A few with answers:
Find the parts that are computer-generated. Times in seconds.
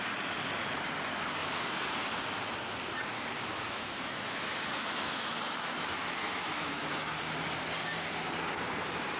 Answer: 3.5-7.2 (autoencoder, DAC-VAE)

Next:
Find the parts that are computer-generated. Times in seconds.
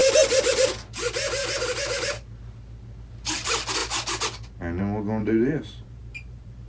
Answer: 5.2-6.7 (vocoder, BigVGAN v2)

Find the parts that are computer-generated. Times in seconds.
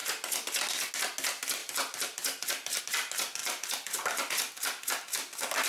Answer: 1.6-2.8 (vocoder, BigVGAN v2)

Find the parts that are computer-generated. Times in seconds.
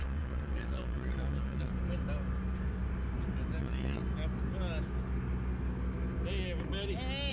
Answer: 0.0-1.7 (vocoder, Vocos); 3.6-4.0